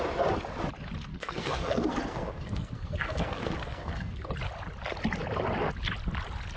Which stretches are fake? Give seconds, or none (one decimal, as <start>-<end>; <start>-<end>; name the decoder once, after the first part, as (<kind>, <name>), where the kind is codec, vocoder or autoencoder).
1.1-4.3 (codec, SNAC)

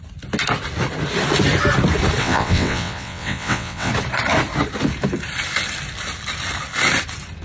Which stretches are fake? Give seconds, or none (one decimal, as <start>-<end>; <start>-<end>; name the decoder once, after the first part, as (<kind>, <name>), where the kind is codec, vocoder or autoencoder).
2.2-3.9 (vocoder, WaveNeXt)

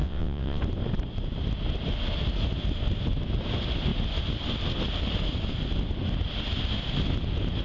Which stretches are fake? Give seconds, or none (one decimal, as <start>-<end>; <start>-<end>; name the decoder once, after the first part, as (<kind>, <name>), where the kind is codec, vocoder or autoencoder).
0.0-0.6 (vocoder, WaveNeXt)

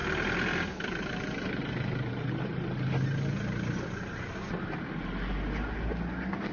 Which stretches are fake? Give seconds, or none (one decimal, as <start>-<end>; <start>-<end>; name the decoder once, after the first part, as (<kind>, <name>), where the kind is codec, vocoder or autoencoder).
none